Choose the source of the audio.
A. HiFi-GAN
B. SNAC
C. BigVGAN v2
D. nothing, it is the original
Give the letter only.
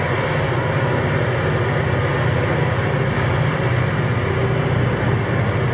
D